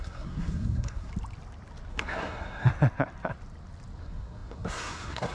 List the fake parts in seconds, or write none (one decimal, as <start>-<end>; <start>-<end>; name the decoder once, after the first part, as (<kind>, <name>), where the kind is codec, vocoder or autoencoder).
0.0-1.1 (codec, SNAC); 1.9-2.7; 4.0-5.3

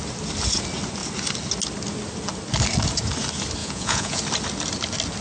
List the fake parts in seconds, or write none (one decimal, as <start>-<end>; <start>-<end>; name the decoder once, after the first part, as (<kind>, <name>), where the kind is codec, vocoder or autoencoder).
3.6-4.2 (vocoder, Vocos)

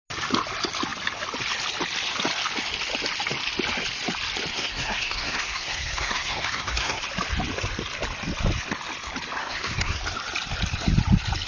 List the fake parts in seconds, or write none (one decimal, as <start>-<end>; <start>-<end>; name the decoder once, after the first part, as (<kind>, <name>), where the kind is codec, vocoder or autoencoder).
4.5-7.0 (codec, SNAC); 9.4-10.0

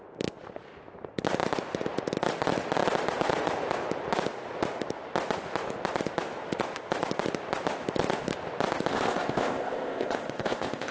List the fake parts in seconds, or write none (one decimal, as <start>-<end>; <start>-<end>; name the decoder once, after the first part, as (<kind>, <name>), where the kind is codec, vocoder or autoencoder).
8.9-10.9 (codec, ZipCodec)

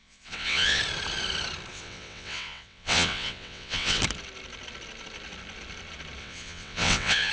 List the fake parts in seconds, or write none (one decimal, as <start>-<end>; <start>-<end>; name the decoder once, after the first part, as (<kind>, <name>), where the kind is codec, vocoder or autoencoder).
0.0-0.8 (vocoder, WaveNeXt); 1.7-4.0; 6.2-7.3

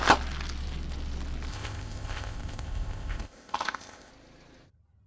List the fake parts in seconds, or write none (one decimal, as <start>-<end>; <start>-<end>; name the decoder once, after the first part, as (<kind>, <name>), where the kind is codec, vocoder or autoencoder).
1.5-4.1 (codec, ZipCodec)

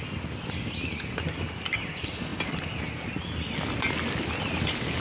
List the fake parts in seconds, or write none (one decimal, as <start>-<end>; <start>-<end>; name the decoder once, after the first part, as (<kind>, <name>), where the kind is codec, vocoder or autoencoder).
none

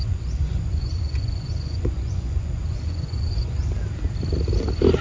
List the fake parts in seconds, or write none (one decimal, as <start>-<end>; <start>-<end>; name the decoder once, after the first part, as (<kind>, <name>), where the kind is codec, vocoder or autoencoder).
0.0-3.6 (vocoder, Vocos)